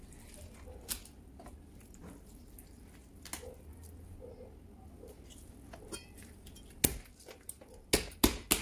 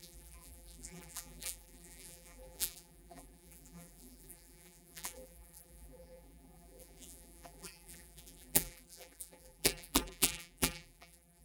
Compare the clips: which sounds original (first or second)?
first